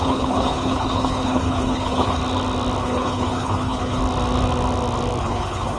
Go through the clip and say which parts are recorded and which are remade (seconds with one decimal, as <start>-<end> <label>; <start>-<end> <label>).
0.0-2.2 remade; 2.2-2.8 recorded; 2.8-4.0 remade; 4.0-5.2 recorded; 5.2-5.8 remade